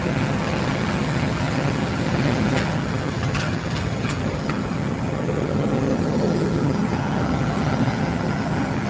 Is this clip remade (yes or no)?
yes